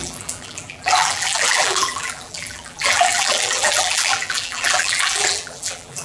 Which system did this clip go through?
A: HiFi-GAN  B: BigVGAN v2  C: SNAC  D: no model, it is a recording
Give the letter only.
B